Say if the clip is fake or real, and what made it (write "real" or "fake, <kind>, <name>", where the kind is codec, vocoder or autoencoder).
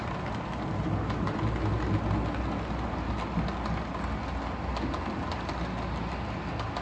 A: real